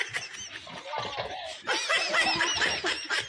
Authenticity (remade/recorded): recorded